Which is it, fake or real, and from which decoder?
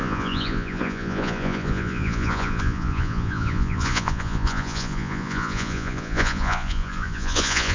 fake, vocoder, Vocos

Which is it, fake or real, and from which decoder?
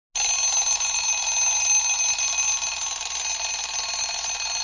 real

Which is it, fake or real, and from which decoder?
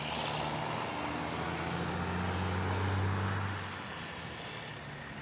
real